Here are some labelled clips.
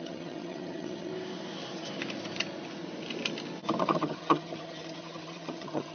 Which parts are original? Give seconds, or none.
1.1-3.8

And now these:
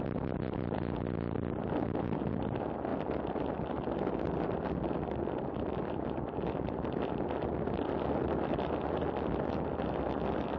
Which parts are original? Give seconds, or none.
0.0-10.6

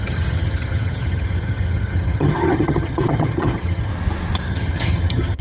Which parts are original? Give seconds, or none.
3.9-4.5

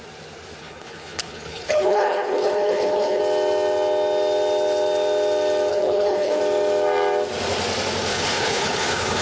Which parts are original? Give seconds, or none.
0.0-0.6; 3.2-5.7; 6.4-8.1